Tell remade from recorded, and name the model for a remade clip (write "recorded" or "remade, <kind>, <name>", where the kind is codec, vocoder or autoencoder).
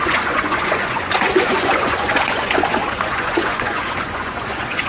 remade, vocoder, Vocos